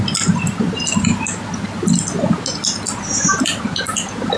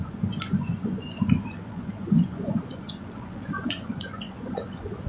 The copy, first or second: second